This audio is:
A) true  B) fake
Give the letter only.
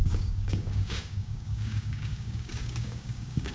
B